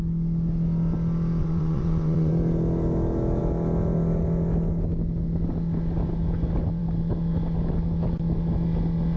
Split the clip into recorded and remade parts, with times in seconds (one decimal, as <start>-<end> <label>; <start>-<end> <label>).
0.0-1.4 recorded; 1.4-2.3 remade; 2.3-9.2 recorded